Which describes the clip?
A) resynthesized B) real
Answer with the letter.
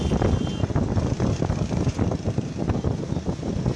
B